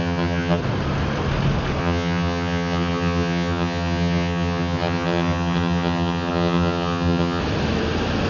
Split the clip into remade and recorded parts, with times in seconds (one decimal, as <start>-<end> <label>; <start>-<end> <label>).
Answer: 0.0-0.6 remade; 0.6-1.8 recorded; 1.8-7.4 remade; 7.4-8.3 recorded